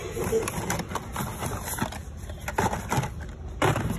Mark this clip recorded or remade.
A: recorded